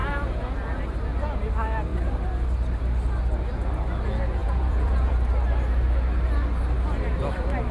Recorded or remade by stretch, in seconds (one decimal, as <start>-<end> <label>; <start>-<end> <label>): 0.0-0.8 remade; 0.8-4.4 recorded; 4.4-5.1 remade; 5.1-7.7 recorded